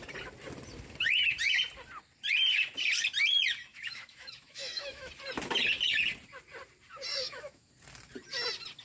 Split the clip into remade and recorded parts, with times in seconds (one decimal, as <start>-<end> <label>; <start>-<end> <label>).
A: 0.0-3.7 recorded; 3.7-5.1 remade; 5.1-7.1 recorded; 7.1-7.7 remade; 7.7-8.8 recorded